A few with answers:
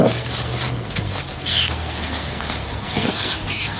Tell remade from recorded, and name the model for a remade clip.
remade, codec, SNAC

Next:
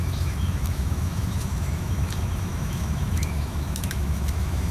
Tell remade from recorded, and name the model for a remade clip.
remade, autoencoder, DAC-VAE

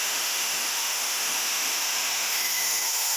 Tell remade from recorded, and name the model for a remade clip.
remade, autoencoder, DAC-VAE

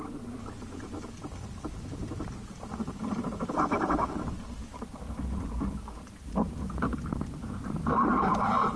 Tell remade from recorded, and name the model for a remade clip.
recorded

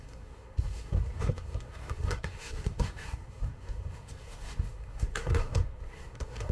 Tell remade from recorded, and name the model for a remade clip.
remade, codec, SNAC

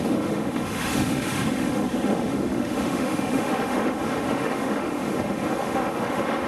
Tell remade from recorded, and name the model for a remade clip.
remade, autoencoder, DAC-VAE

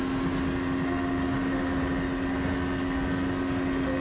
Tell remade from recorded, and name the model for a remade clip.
recorded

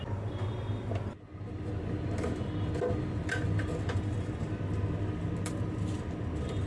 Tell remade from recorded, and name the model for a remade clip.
recorded